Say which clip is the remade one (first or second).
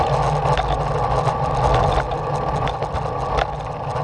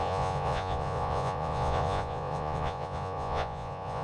second